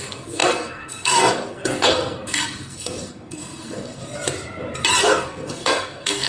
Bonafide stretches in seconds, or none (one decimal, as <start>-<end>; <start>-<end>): 4.0-5.0